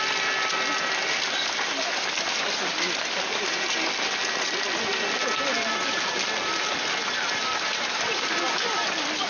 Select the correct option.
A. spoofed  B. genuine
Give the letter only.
B